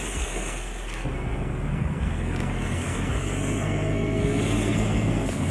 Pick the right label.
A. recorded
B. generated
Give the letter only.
B